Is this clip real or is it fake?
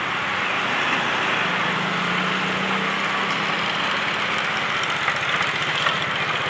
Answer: real